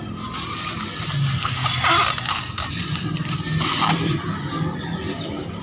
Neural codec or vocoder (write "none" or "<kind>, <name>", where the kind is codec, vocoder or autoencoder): none